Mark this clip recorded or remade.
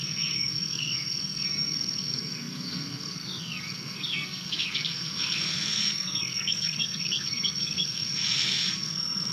remade